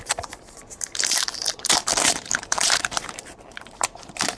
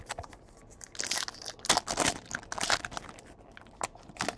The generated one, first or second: first